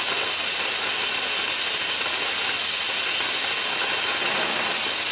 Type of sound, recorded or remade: recorded